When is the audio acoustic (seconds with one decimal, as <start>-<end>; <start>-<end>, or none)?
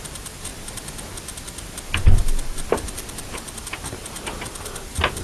0.0-5.2